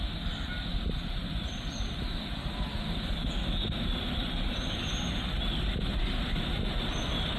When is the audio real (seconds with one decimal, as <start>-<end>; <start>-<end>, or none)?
0.0-7.4